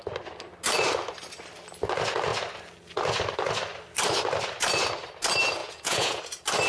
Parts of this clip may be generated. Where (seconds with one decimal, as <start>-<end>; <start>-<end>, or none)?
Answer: 5.6-6.2